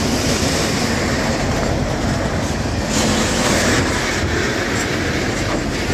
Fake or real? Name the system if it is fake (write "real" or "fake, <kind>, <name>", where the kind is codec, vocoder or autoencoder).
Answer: real